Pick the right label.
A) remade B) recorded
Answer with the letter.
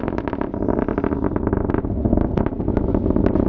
B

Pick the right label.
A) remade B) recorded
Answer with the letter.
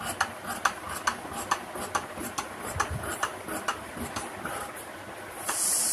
B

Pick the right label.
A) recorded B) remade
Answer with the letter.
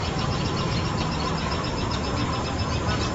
A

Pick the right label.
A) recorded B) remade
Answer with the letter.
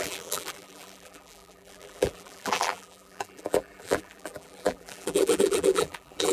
B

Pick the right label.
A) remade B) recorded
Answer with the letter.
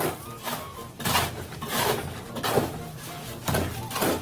B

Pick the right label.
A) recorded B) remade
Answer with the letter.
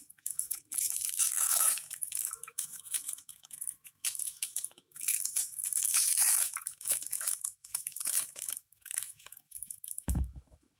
B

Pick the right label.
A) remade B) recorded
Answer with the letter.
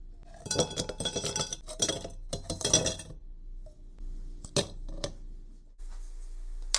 B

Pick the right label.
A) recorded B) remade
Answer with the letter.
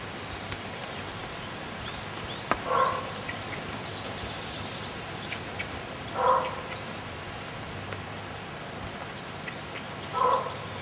A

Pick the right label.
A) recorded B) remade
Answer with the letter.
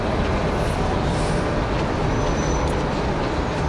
A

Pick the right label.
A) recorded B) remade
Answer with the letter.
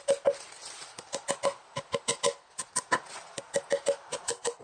A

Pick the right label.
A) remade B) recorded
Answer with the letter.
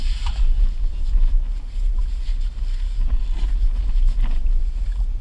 B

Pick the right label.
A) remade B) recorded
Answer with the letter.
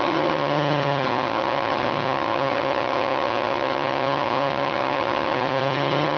A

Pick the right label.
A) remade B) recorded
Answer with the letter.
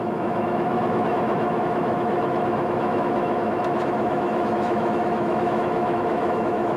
A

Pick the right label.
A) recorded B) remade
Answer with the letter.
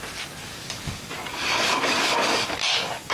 B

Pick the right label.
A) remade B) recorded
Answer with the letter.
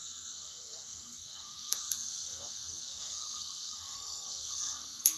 A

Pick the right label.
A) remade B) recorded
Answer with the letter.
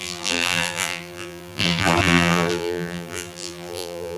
A